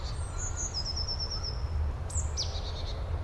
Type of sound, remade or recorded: recorded